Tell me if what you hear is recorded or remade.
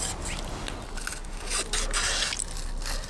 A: recorded